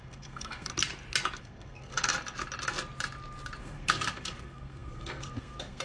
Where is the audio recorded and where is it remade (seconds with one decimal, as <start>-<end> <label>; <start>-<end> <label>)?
0.0-0.7 remade; 0.7-1.4 recorded; 1.4-2.1 remade; 2.1-3.6 recorded; 3.6-5.8 remade